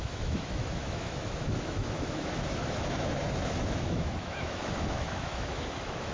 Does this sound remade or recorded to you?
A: remade